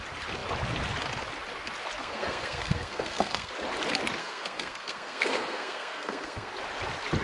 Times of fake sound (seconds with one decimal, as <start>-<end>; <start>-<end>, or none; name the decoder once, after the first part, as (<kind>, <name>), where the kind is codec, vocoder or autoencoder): 2.0-3.5 (codec, SNAC); 4.2-6.5